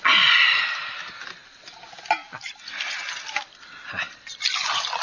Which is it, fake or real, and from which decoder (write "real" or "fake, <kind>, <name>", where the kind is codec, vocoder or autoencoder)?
real